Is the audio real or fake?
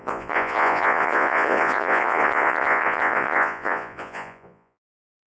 fake